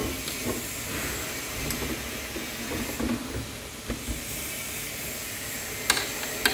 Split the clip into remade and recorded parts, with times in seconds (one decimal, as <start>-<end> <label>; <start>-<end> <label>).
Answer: 0.0-6.5 recorded